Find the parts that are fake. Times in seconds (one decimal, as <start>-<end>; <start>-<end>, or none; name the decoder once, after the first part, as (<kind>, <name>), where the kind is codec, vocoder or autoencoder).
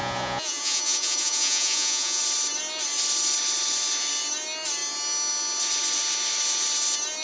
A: 0.0-2.2 (vocoder, Vocos)